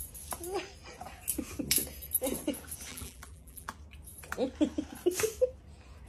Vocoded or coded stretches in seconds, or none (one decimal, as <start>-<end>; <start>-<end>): 2.9-3.7